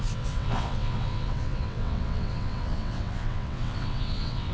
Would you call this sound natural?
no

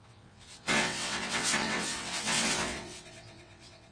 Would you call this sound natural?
no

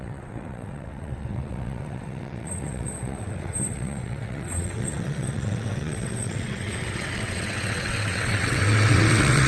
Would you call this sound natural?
no